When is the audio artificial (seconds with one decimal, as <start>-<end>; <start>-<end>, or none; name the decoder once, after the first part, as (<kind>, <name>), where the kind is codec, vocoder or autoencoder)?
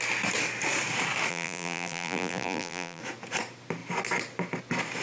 1.3-3.0 (vocoder, BigVGAN v2)